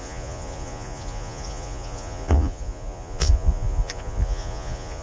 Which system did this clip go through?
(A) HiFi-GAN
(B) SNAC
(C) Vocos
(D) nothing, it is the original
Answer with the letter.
C